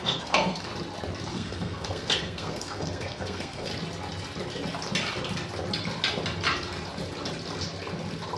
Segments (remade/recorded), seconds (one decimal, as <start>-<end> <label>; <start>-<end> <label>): 0.0-0.7 remade; 0.7-1.3 recorded; 1.3-3.7 remade; 3.7-8.4 recorded